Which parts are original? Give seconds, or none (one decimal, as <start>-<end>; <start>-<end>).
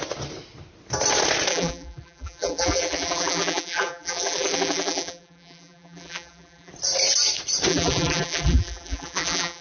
0.0-1.5; 6.7-7.7